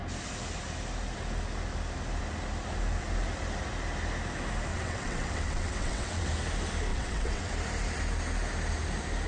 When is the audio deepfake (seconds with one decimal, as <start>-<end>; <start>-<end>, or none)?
4.7-6.3; 6.9-7.5